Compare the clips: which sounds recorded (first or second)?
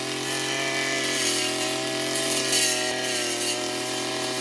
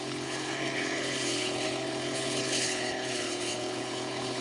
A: first